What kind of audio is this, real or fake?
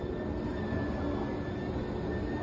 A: real